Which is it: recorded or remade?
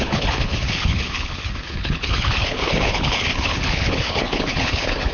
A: remade